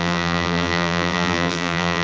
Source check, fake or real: fake